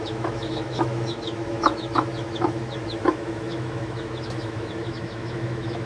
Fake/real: fake